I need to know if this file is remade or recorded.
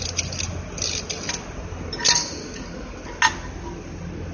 recorded